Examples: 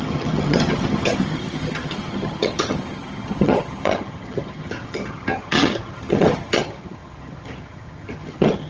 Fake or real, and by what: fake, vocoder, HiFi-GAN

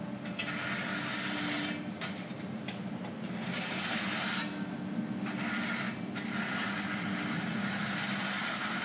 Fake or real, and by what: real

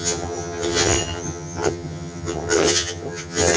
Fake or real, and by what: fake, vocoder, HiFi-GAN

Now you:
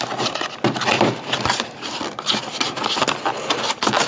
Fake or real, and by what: real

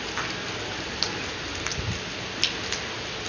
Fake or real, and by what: real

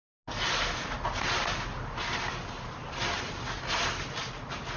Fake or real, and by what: real